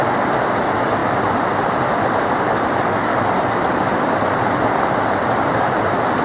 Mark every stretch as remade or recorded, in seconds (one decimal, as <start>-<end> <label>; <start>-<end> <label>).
0.0-6.2 recorded